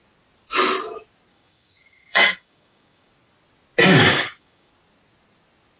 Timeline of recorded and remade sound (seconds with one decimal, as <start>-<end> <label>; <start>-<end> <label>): 0.0-1.3 recorded; 1.3-3.1 remade; 3.1-3.8 recorded; 3.8-4.7 remade; 4.7-5.8 recorded